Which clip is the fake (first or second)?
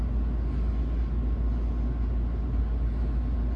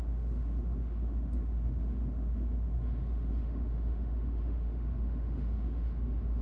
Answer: second